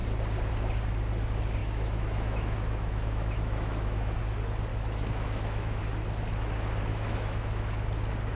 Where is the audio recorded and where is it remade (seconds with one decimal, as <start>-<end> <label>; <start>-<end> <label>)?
0.0-1.6 recorded; 1.6-4.2 remade; 4.2-4.7 recorded; 4.7-5.8 remade; 5.8-6.9 recorded; 6.9-7.7 remade; 7.7-8.3 recorded